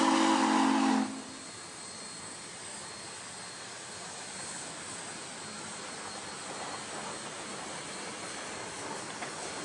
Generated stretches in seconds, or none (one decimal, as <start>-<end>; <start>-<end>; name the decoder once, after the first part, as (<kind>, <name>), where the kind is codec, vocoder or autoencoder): none